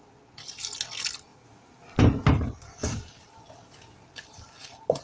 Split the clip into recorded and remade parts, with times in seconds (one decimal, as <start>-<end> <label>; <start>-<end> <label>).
0.0-5.0 recorded